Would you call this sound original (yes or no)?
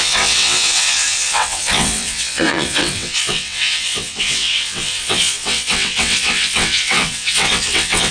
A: no